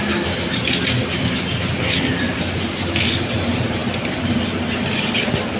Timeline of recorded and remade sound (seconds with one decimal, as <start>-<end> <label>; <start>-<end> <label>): 0.0-5.6 recorded

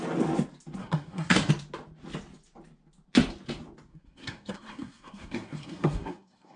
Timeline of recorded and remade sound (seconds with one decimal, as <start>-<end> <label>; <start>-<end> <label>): 0.0-0.8 recorded; 0.8-1.5 remade; 1.5-3.9 recorded; 3.9-6.6 remade

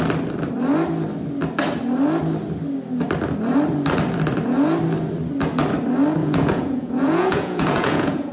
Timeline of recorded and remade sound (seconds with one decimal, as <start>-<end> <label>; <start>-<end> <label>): 0.0-6.2 recorded; 6.2-8.3 remade

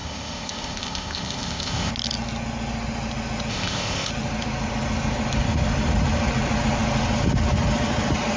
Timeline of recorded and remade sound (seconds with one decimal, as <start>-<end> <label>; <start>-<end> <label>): 0.0-1.9 remade; 1.9-3.5 recorded; 3.5-4.1 remade; 4.1-8.4 recorded